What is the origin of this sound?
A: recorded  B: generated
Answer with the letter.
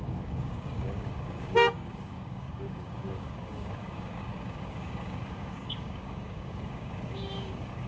B